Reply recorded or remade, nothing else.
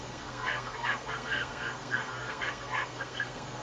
remade